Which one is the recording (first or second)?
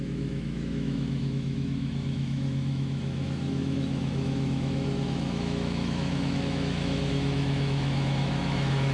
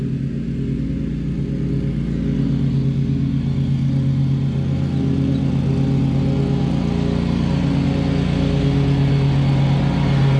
second